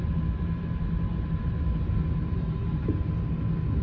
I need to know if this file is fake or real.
real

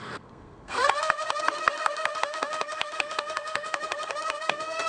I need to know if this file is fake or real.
fake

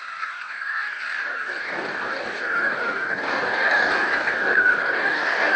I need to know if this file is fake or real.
fake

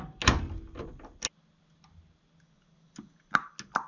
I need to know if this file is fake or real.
real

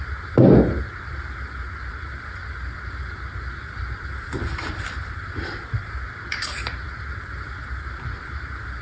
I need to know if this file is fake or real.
real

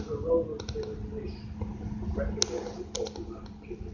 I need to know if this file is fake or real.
real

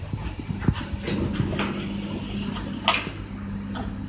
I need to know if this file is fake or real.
real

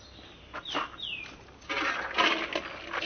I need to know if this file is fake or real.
real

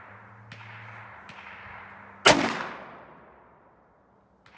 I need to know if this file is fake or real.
real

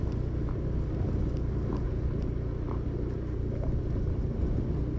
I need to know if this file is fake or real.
real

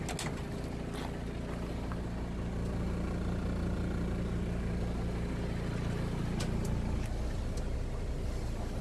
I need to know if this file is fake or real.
real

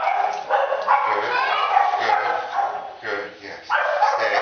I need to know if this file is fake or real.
real